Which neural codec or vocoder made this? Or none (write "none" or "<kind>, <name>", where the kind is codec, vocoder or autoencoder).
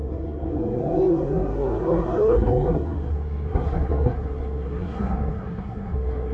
codec, SNAC